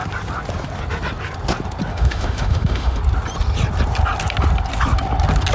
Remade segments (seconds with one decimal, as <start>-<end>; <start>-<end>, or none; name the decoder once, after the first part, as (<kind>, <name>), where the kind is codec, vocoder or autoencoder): 1.9-3.0 (autoencoder, DAC-VAE)